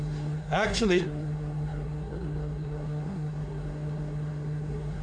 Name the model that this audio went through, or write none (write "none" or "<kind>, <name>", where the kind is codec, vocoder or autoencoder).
codec, SNAC